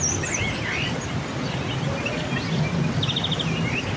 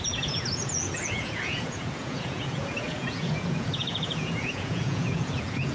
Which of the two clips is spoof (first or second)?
second